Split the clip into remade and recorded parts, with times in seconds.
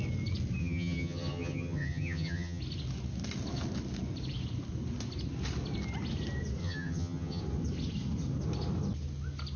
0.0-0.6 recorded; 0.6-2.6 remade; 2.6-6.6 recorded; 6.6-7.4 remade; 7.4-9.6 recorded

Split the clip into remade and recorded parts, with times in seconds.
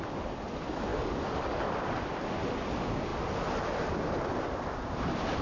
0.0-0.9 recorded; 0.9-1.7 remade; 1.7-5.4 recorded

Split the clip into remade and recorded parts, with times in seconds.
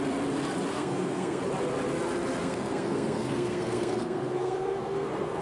0.0-0.7 recorded; 0.7-1.4 remade; 1.4-2.4 recorded; 2.4-5.4 remade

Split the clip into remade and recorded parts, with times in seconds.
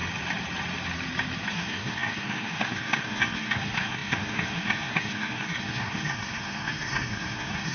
0.0-1.5 recorded; 1.5-7.7 remade